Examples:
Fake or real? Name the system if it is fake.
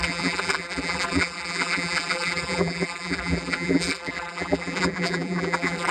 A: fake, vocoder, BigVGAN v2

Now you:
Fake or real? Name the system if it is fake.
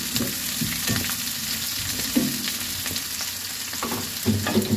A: real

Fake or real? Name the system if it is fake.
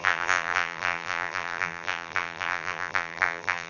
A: fake, vocoder, BigVGAN v2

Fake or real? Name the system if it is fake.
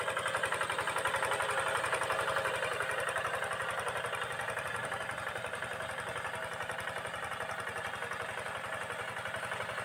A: real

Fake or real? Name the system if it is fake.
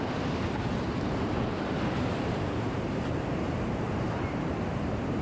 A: fake, vocoder, BigVGAN v2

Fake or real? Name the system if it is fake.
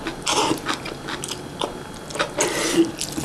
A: real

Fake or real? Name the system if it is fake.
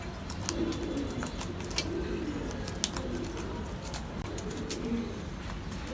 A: real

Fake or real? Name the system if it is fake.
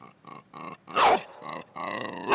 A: fake, vocoder, BigVGAN v2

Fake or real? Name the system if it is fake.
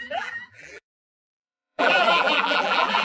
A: fake, vocoder, BigVGAN v2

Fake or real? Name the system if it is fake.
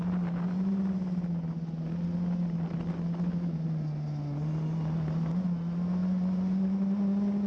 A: real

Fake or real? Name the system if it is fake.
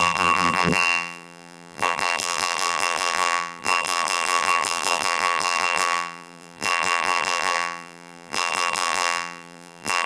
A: fake, vocoder, BigVGAN v2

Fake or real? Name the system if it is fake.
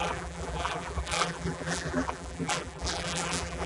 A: fake, vocoder, BigVGAN v2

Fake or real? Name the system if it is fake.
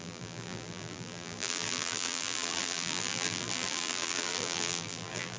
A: fake, vocoder, BigVGAN v2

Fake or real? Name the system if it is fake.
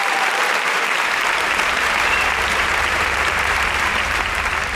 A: fake, vocoder, BigVGAN v2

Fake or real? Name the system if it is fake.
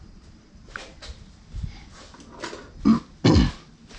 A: real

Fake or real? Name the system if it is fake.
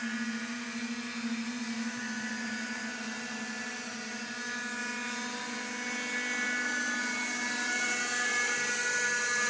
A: real